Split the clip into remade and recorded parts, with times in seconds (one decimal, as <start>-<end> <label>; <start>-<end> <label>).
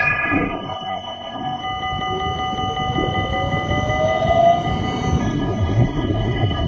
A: 0.0-1.6 remade; 1.6-5.2 recorded; 5.2-6.7 remade